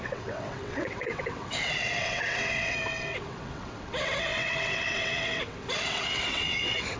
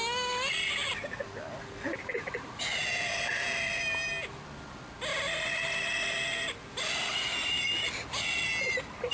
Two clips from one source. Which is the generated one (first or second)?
first